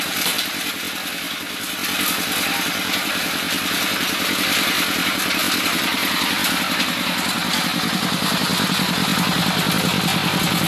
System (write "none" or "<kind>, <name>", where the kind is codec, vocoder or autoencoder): vocoder, BigVGAN v2